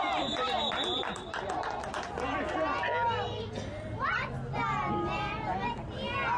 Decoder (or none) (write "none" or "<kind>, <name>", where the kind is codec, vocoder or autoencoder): none